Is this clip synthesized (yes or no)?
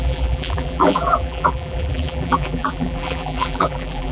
yes